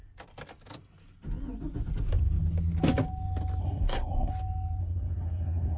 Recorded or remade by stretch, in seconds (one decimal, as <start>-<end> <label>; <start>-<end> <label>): 0.0-3.6 recorded; 3.6-4.3 remade; 4.3-4.8 recorded; 4.8-5.8 remade